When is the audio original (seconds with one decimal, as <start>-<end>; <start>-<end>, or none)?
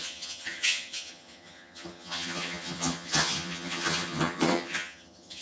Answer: none